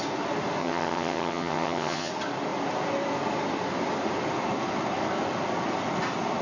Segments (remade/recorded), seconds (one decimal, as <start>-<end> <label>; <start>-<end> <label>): 0.0-0.6 recorded; 0.6-2.1 remade; 2.1-6.4 recorded